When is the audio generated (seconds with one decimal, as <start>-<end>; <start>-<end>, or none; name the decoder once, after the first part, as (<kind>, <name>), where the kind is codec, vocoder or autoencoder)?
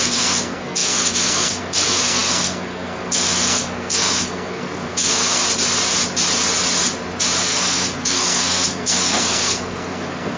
0.0-5.4 (codec, SNAC); 7.4-10.4